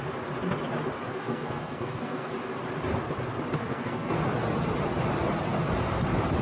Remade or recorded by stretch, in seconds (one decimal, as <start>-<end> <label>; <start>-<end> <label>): 0.0-1.2 recorded; 1.2-2.3 remade; 2.3-3.7 recorded; 3.7-4.2 remade; 4.2-6.4 recorded